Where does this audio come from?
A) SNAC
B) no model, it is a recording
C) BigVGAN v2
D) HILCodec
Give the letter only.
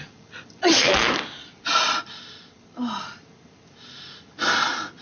B